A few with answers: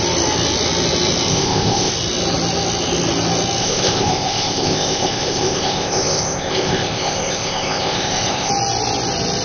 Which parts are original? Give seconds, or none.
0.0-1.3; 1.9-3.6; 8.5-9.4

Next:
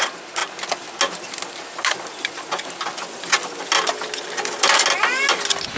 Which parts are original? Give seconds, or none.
0.0-5.8

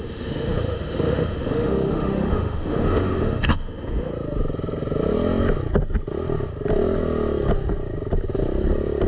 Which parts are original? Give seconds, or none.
4.1-9.1

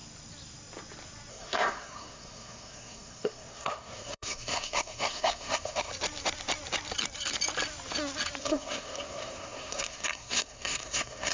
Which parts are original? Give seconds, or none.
0.0-1.3; 5.9-8.4

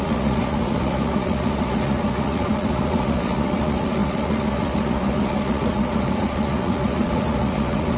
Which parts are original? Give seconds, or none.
none

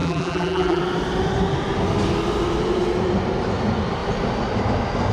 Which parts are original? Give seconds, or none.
0.8-5.1

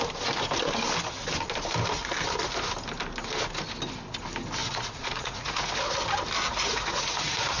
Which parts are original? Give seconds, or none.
0.0-4.6; 5.7-6.5